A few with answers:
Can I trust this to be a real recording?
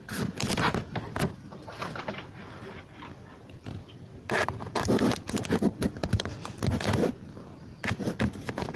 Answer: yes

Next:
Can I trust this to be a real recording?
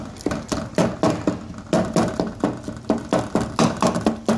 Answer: yes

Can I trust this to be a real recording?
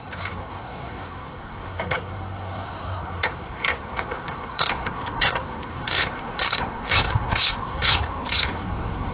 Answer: no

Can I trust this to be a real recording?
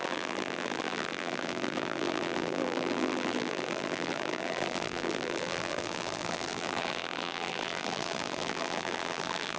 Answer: no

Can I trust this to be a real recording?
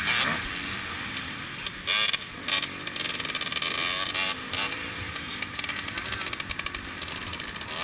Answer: yes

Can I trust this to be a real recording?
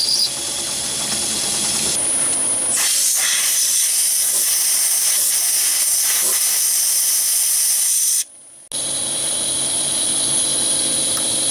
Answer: yes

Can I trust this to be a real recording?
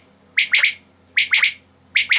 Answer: yes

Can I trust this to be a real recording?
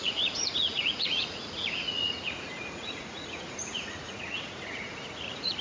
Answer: no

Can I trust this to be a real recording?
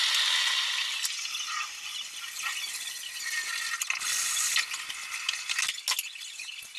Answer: yes